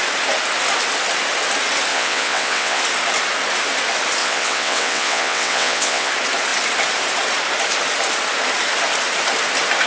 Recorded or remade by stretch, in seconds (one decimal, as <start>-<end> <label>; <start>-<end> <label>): 0.0-1.9 recorded; 1.9-2.8 remade; 2.8-4.2 recorded; 4.2-6.1 remade; 6.1-9.9 recorded